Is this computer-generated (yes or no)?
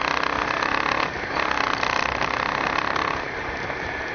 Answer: no